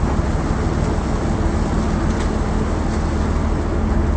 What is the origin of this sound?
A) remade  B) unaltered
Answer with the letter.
B